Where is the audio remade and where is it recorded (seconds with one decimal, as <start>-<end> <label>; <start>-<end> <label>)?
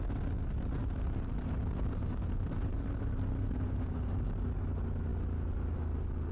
0.0-0.8 recorded; 0.8-4.6 remade; 4.6-6.3 recorded